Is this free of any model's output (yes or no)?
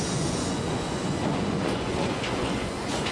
no